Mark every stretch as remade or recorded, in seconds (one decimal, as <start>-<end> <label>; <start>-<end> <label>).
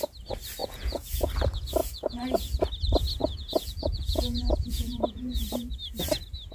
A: 0.0-0.6 recorded; 0.6-1.3 remade; 1.3-1.8 recorded; 1.8-2.6 remade; 2.6-3.2 recorded; 3.2-5.4 remade; 5.4-6.5 recorded